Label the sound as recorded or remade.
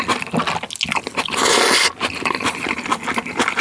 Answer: recorded